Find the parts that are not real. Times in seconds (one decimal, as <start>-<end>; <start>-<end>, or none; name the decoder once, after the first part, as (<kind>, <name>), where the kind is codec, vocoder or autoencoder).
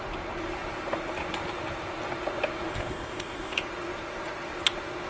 2.7-3.6 (codec, ZipCodec)